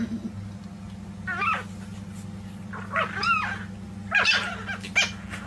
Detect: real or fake real